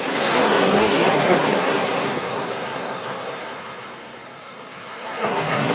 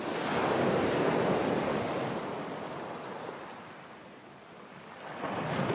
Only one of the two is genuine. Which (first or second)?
second